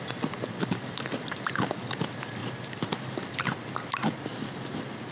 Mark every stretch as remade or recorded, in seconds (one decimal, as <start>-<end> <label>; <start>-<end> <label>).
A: 0.0-5.1 recorded